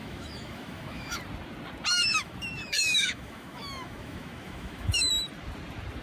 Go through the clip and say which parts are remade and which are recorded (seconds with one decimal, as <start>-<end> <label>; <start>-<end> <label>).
0.0-1.2 remade; 1.2-1.9 recorded; 1.9-5.1 remade; 5.1-6.0 recorded

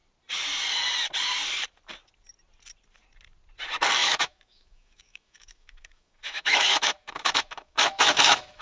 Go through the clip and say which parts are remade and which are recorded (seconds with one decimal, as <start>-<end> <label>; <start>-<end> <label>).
0.0-4.0 recorded; 4.0-8.6 remade

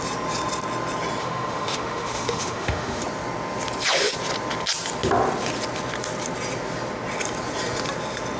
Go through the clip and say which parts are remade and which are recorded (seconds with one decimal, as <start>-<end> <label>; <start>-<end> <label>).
0.0-1.2 recorded; 1.2-3.0 remade; 3.0-8.4 recorded